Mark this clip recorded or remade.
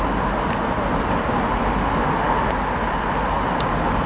recorded